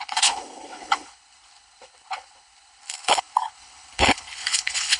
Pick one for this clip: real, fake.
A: fake